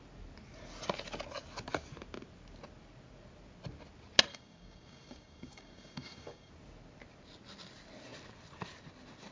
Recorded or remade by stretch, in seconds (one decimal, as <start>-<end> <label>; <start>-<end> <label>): 0.0-4.3 recorded; 4.3-6.5 remade; 6.5-9.3 recorded